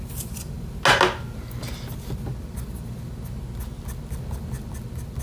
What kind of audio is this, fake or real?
real